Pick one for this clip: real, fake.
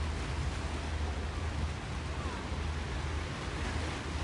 real